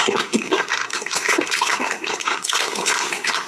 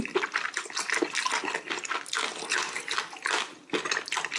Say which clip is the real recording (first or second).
second